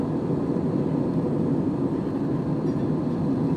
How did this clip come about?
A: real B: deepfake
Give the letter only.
A